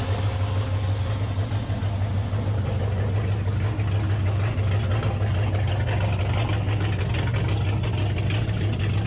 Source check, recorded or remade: recorded